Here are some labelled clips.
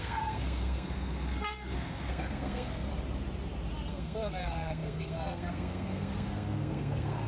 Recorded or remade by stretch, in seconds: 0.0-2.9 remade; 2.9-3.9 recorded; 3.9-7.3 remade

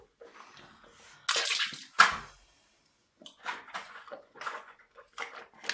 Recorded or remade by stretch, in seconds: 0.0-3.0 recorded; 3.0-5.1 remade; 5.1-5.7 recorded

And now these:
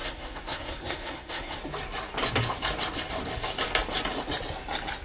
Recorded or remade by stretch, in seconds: 0.0-1.6 remade; 1.6-5.0 recorded

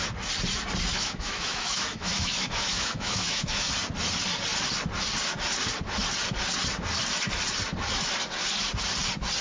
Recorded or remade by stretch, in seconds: 0.0-0.9 recorded; 0.9-3.7 remade; 3.7-9.4 recorded

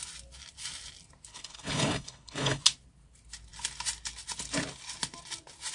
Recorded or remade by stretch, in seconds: 0.0-1.3 recorded; 1.3-2.6 remade; 2.6-5.7 recorded